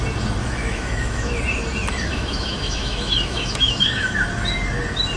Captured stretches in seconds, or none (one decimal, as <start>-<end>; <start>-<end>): 0.0-0.4; 1.4-2.1; 4.1-5.2